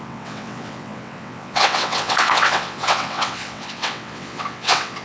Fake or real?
fake